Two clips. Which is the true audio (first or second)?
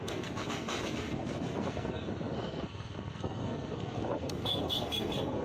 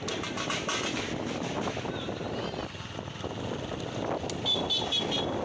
second